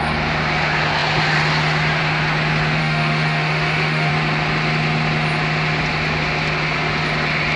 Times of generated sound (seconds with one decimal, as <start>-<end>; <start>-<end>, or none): 2.8-4.1